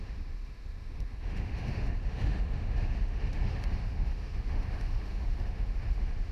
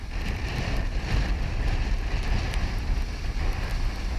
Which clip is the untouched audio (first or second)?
second